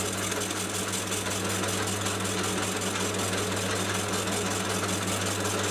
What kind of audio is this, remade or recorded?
recorded